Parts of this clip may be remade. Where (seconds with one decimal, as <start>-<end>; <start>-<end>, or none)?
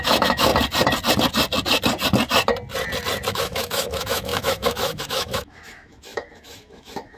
0.0-0.5; 3.3-7.2